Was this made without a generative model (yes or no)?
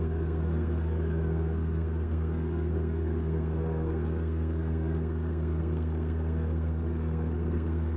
no